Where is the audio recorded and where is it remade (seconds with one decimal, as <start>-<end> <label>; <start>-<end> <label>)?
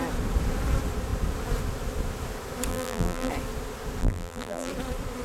0.0-2.7 recorded; 2.7-3.3 remade; 3.3-4.0 recorded; 4.0-4.7 remade; 4.7-5.2 recorded